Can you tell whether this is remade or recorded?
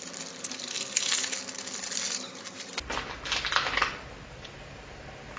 recorded